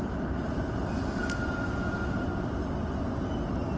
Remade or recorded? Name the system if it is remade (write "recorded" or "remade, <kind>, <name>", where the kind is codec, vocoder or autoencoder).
recorded